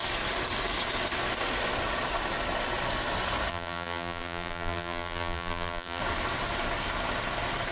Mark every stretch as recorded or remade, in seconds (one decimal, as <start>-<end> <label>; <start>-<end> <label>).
0.0-3.5 recorded; 3.5-6.0 remade; 6.0-7.7 recorded

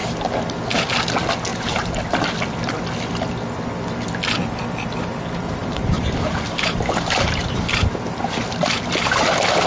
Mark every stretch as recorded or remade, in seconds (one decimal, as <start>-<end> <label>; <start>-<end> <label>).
0.0-1.5 recorded; 1.5-2.0 remade; 2.0-5.6 recorded; 5.6-8.4 remade; 8.4-9.7 recorded